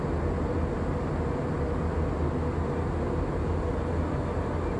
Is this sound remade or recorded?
recorded